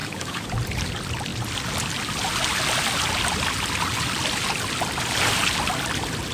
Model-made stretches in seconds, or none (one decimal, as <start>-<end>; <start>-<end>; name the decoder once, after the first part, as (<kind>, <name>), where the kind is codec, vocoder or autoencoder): 0.0-0.5 (autoencoder, DAC-VAE)